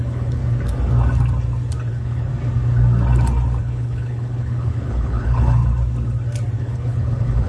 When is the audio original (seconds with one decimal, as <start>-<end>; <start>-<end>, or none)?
0.4-1.9; 2.3-3.6; 5.6-6.6